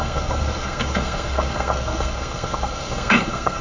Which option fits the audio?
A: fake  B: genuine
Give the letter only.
A